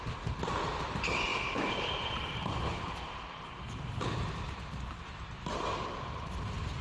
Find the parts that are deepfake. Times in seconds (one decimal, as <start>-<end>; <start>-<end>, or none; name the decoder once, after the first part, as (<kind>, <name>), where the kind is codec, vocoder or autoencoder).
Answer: none